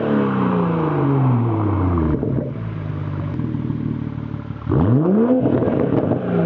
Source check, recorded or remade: remade